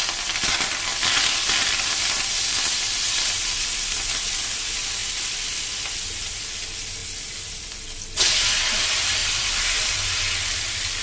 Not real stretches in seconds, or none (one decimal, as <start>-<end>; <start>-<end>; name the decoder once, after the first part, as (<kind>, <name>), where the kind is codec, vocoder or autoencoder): 0.9-1.9 (vocoder, BigVGAN v2); 5.0-6.4; 7.0-7.7; 9.2-9.9